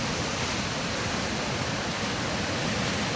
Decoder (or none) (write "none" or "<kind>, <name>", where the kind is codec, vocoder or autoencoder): none